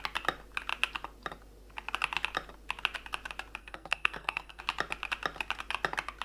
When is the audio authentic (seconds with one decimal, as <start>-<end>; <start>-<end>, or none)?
0.0-3.6; 4.6-6.2